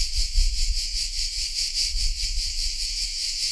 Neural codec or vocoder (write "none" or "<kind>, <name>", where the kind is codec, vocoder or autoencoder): autoencoder, DAC-VAE